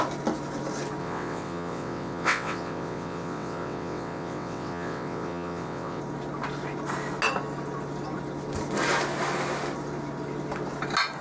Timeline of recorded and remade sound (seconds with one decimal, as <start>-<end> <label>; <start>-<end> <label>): 0.0-1.0 recorded; 1.0-6.0 remade; 6.0-11.2 recorded